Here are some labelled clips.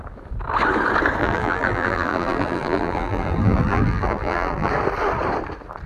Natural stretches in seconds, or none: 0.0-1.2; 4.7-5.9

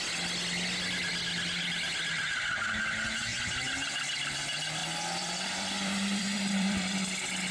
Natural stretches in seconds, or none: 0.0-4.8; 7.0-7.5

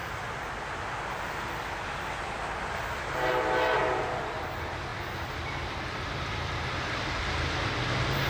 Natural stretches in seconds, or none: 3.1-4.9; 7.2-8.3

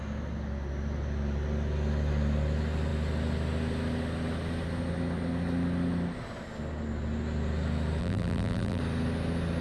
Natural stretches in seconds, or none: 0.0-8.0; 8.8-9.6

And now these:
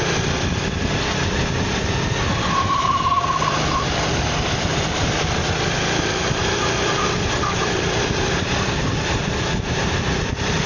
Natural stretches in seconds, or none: 5.4-8.3

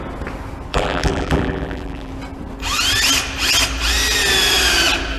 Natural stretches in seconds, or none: 0.0-0.7; 2.1-5.2

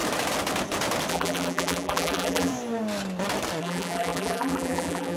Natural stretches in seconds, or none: 0.0-1.1; 2.5-3.6